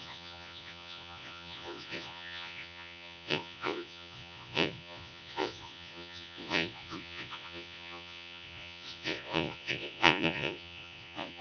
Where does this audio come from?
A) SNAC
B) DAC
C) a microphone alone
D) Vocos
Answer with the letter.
D